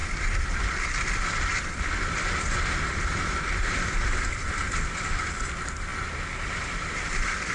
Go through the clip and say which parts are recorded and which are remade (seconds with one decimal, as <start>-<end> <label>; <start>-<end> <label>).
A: 0.0-0.6 remade; 0.6-1.5 recorded; 1.5-4.5 remade; 4.5-7.5 recorded